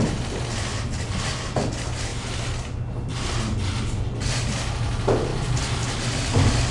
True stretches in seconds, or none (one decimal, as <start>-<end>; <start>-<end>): 0.0-6.7